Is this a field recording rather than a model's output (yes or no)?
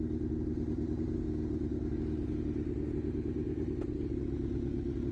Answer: yes